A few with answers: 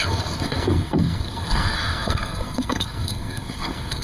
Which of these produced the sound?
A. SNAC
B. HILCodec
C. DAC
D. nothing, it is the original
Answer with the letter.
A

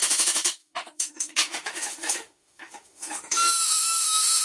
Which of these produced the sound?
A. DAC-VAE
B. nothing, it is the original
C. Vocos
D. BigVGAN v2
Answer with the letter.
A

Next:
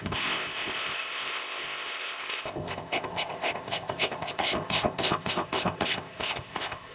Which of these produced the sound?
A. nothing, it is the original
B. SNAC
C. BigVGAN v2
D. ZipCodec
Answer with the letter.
D